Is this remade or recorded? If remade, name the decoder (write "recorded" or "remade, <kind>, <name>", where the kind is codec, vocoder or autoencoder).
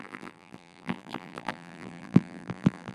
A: remade, vocoder, BigVGAN v2